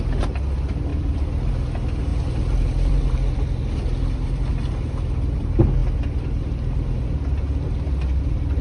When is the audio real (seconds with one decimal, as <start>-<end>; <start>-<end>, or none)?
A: 0.0-0.9; 1.5-2.1; 4.5-8.6